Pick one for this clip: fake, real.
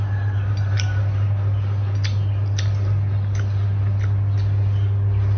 real